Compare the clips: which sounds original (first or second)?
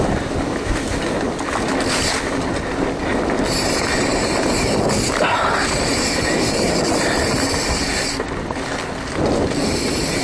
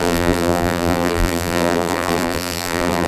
first